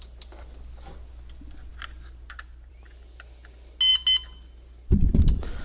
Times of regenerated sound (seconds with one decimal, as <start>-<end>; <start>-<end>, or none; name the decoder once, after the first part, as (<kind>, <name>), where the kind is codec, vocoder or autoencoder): none